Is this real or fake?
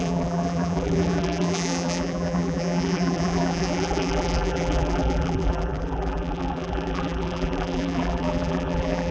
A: fake